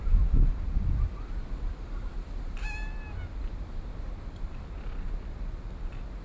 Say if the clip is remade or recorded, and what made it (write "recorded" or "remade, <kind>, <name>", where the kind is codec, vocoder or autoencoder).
recorded